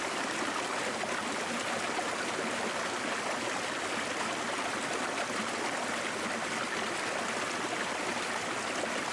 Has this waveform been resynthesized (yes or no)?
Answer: no